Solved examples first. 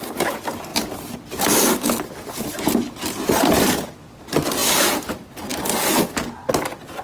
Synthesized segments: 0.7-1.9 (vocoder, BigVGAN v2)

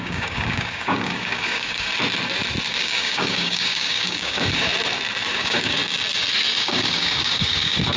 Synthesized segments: 0.0-1.9 (codec, DAC); 2.7-4.7; 5.3-5.8; 6.6-8.0

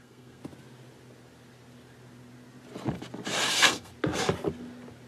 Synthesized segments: 0.0-0.4 (codec, SNAC); 3.5-3.9

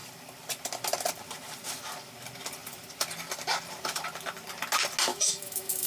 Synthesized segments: 5.1-5.9 (autoencoder, DAC-VAE)